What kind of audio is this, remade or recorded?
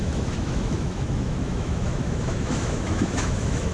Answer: remade